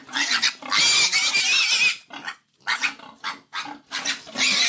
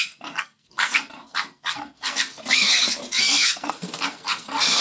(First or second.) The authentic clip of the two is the first